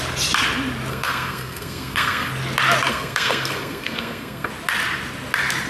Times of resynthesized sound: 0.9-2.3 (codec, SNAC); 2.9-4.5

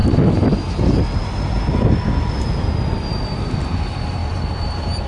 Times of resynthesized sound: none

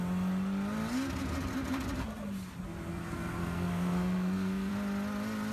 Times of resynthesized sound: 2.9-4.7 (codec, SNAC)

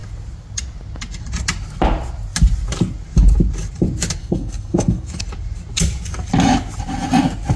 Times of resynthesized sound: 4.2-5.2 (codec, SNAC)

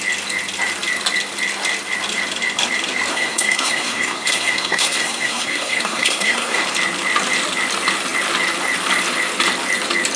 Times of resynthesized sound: 3.1-6.6 (codec, SNAC)